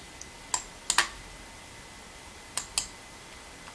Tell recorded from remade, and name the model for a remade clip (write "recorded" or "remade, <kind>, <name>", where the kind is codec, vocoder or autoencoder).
recorded